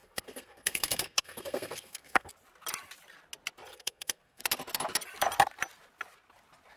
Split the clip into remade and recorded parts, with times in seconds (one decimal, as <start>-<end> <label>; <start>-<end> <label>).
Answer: 0.0-2.3 remade; 2.3-3.7 recorded; 3.7-4.4 remade; 4.4-6.8 recorded